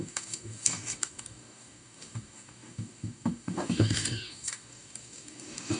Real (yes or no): no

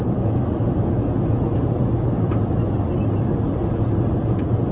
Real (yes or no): yes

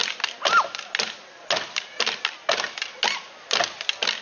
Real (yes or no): yes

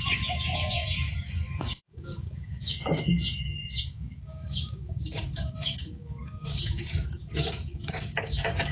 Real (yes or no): no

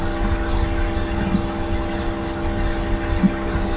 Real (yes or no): yes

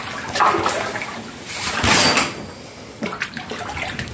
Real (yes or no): yes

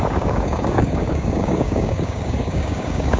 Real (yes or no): no